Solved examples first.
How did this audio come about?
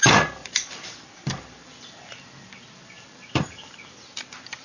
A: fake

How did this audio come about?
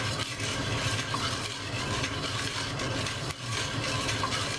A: fake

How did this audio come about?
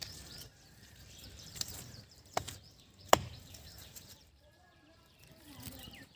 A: fake